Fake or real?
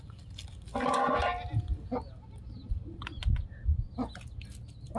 real